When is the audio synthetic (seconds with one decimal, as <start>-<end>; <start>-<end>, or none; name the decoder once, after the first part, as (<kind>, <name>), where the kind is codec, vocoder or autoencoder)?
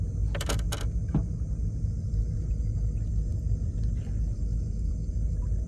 none